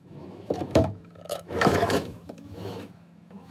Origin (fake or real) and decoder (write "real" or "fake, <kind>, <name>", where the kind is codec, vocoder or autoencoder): fake, autoencoder, DAC-VAE